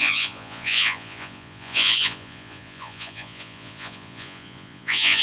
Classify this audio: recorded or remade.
remade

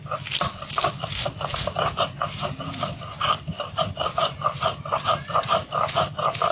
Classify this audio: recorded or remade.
recorded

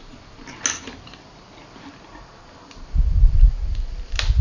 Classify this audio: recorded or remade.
recorded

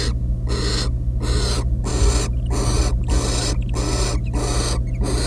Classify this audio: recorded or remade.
recorded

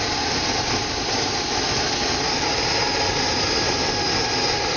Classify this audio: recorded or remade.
recorded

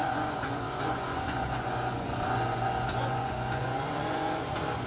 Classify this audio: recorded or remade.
remade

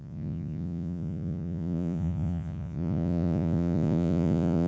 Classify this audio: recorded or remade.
remade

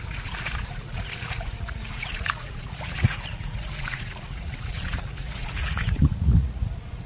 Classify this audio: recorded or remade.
remade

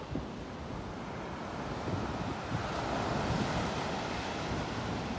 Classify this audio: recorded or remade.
recorded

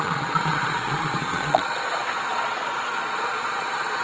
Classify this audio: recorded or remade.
remade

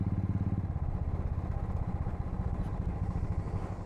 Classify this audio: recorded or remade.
recorded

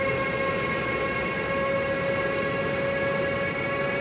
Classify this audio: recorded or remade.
recorded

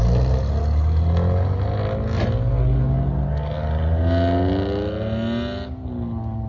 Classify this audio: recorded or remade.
recorded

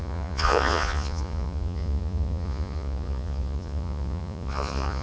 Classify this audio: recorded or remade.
remade